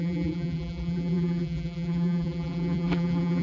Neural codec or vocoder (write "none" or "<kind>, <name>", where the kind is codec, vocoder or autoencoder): vocoder, BigVGAN v2